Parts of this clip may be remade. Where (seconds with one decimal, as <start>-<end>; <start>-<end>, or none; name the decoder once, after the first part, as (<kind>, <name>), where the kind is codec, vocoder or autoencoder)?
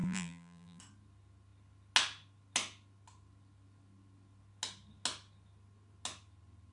0.0-0.8 (vocoder, BigVGAN v2)